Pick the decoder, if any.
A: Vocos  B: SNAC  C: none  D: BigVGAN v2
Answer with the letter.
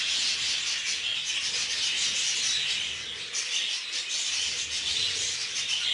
C